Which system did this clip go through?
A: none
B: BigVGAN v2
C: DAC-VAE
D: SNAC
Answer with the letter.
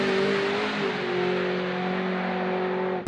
A